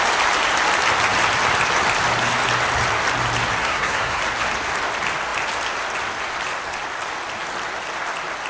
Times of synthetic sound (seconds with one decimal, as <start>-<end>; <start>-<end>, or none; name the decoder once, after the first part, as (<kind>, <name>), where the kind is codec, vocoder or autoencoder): 3.6-4.2 (codec, SNAC)